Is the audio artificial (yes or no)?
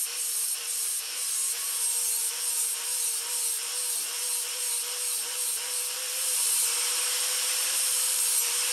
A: yes